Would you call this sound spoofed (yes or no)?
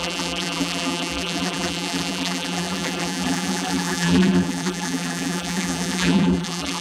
yes